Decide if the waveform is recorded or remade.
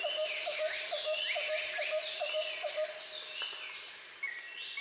recorded